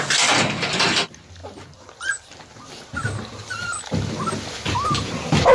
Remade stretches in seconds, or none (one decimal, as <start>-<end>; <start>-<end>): none